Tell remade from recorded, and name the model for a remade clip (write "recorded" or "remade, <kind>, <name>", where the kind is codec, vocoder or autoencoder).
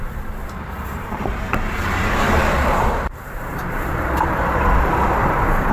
remade, vocoder, BigVGAN v2